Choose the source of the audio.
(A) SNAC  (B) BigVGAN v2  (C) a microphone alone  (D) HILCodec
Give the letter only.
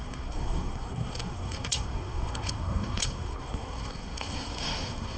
A